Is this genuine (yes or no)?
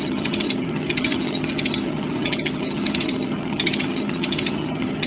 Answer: no